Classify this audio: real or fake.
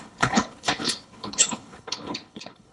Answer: fake